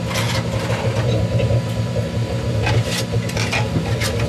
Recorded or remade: recorded